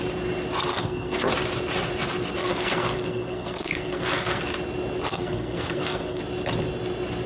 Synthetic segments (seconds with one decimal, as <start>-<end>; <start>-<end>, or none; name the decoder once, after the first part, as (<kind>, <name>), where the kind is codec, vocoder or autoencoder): 0.7-1.3 (codec, SNAC); 2.4-4.4; 5.1-6.2